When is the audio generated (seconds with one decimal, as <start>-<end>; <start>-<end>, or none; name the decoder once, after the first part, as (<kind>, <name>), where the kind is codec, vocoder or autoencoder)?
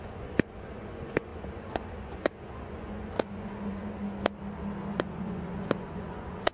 0.0-4.0 (vocoder, Vocos); 4.9-6.5